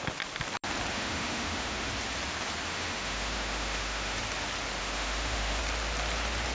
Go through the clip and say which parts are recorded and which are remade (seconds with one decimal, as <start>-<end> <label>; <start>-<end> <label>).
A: 0.0-0.9 recorded; 0.9-1.9 remade; 1.9-2.7 recorded; 2.7-4.2 remade; 4.2-4.8 recorded; 4.8-5.6 remade; 5.6-6.5 recorded